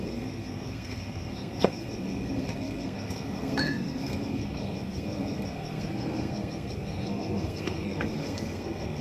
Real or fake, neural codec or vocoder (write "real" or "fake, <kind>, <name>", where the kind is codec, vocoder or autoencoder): fake, codec, SNAC